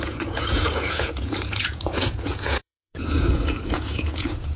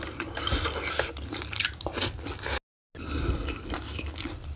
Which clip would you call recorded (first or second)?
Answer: second